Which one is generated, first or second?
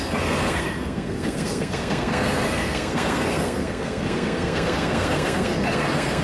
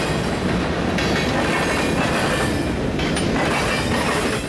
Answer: first